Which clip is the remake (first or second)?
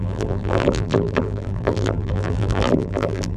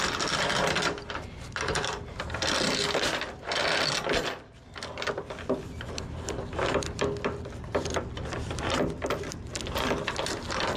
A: first